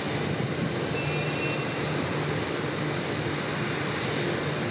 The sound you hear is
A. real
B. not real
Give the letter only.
A